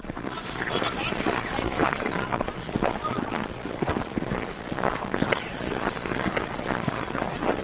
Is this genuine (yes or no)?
no